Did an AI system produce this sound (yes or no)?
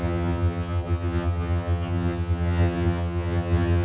yes